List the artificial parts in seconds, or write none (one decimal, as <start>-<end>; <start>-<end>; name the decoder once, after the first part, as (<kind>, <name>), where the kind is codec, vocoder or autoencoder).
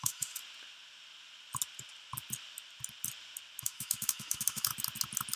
0.0-0.4 (autoencoder, DAC-VAE); 3.6-4.7